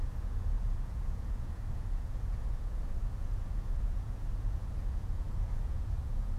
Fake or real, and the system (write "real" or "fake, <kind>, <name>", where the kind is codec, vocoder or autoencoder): fake, vocoder, Vocos